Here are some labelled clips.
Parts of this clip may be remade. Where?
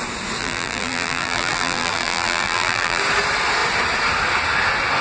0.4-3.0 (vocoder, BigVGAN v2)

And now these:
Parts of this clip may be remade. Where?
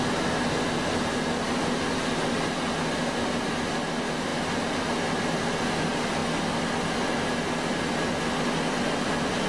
none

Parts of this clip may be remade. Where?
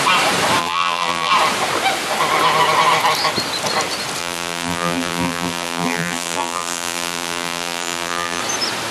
0.6-1.3 (vocoder, BigVGAN v2); 4.2-8.4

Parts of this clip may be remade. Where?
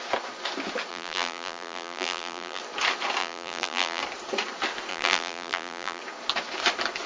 0.9-2.6 (vocoder, BigVGAN v2); 3.2-4.0; 4.9-6.0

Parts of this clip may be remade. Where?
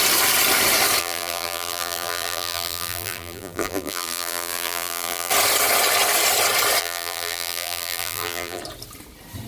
1.0-5.3 (vocoder, BigVGAN v2); 6.8-8.6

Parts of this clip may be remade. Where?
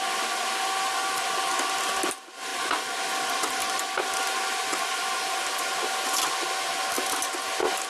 none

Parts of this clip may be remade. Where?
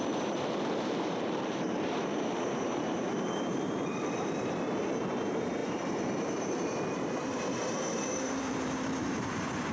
0.0-9.7 (vocoder, BigVGAN v2)